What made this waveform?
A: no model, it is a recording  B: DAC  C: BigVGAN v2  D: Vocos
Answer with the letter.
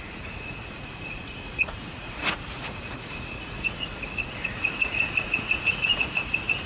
D